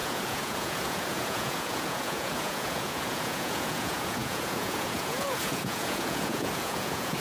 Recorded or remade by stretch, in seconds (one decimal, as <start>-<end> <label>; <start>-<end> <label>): 0.0-7.2 remade